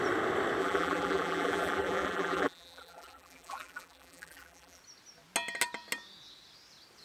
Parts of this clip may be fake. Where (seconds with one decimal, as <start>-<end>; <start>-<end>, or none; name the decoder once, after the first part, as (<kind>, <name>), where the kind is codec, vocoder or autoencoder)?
0.6-4.8 (vocoder, BigVGAN v2)